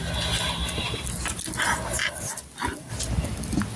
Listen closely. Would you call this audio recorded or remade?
recorded